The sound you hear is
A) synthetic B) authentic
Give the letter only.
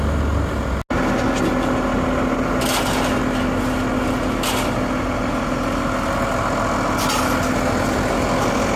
B